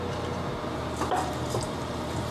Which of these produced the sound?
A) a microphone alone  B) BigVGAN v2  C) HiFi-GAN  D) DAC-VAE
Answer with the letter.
B